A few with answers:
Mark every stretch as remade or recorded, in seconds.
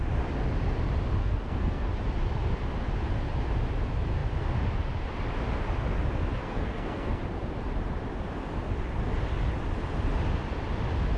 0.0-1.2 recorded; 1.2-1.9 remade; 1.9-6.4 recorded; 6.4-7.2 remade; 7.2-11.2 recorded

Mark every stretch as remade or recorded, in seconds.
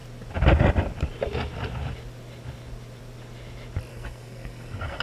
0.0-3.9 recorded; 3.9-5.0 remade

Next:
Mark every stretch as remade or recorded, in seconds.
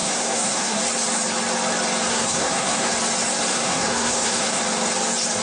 0.0-0.8 remade; 0.8-2.1 recorded; 2.1-2.9 remade; 2.9-3.5 recorded; 3.5-4.6 remade; 4.6-5.4 recorded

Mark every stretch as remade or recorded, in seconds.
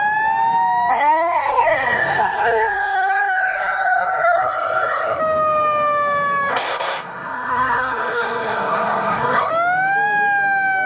0.0-0.9 recorded; 0.9-5.2 remade; 5.2-6.5 recorded; 6.5-9.5 remade; 9.5-10.9 recorded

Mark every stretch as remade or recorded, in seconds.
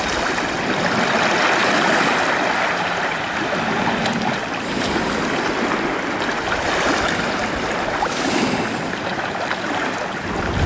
0.0-10.7 recorded